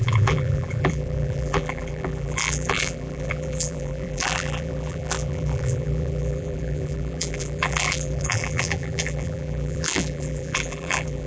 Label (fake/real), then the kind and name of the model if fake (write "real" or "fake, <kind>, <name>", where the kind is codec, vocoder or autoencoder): fake, vocoder, BigVGAN v2